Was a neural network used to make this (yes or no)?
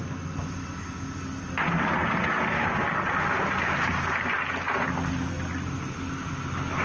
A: no